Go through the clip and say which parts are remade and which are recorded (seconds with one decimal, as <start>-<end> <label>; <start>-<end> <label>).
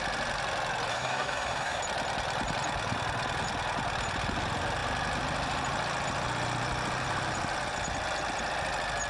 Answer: 0.0-0.9 recorded; 0.9-1.8 remade; 1.8-9.1 recorded